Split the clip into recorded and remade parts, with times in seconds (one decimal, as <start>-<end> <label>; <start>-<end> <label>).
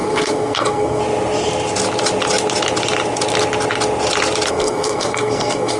0.0-1.0 remade; 1.0-4.5 recorded; 4.5-5.8 remade